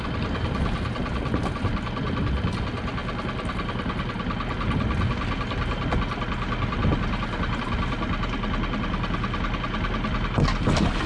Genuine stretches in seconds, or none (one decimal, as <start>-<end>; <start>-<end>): 0.0-11.1